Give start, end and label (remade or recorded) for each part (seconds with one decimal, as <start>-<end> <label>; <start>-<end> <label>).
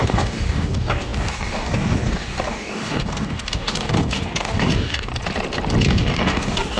0.0-5.1 remade; 5.1-5.8 recorded; 5.8-6.8 remade